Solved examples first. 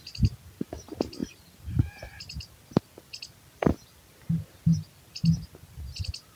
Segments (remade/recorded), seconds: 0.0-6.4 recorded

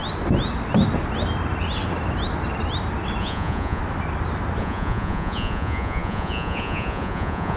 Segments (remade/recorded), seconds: 0.0-3.2 recorded; 3.2-3.8 remade; 3.8-4.6 recorded; 4.6-7.6 remade

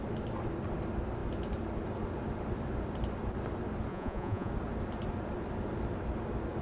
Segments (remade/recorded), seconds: 0.0-3.9 recorded; 3.9-4.5 remade; 4.5-6.6 recorded

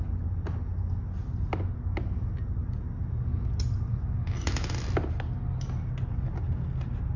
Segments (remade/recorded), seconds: 0.0-7.2 recorded

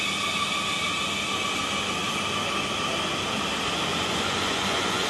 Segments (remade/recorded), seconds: 0.0-3.9 recorded; 3.9-5.1 remade